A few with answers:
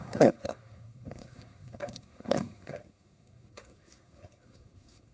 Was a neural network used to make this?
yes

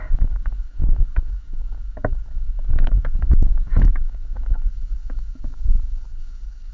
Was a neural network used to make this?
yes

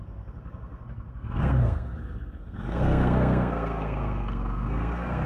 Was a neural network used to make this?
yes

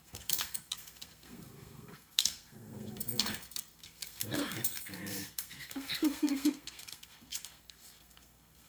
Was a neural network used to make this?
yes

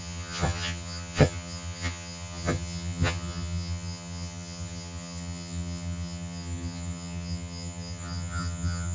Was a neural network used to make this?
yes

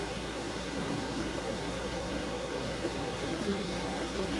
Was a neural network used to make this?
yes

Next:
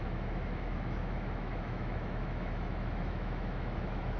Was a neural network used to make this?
yes